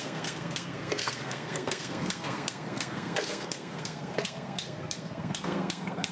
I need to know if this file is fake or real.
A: fake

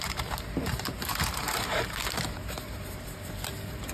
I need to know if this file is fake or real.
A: fake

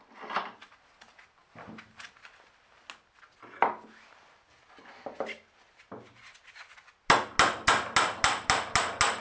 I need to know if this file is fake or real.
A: real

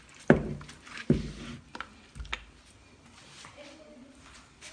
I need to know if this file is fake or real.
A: real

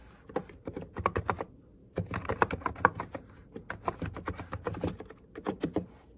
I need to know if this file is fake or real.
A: fake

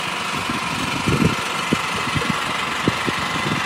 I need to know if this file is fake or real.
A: real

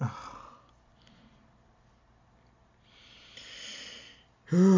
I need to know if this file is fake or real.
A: real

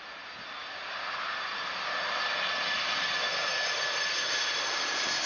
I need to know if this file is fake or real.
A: real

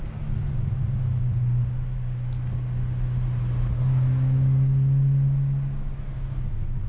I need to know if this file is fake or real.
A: real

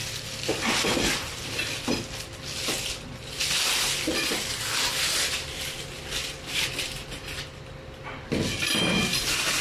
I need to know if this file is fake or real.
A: fake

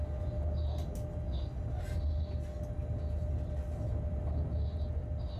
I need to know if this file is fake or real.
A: real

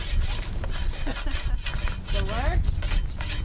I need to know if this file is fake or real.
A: real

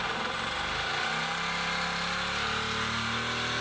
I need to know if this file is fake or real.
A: real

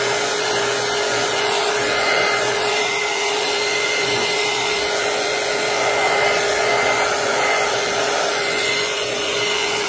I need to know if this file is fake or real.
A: fake